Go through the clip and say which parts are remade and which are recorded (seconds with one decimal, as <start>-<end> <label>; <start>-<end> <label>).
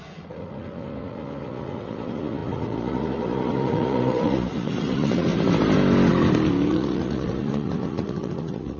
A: 0.0-5.3 remade; 5.3-6.7 recorded; 6.7-8.8 remade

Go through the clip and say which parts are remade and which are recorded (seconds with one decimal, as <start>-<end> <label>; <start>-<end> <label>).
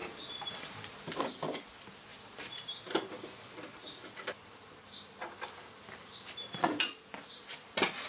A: 0.0-1.2 remade; 1.2-2.1 recorded; 2.1-7.0 remade; 7.0-8.1 recorded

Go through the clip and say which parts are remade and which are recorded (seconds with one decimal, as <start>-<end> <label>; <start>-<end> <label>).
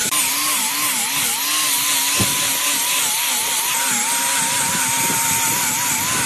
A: 0.0-0.7 remade; 0.7-6.3 recorded